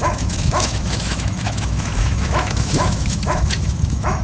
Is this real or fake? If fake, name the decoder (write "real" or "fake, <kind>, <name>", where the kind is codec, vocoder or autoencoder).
fake, autoencoder, DAC-VAE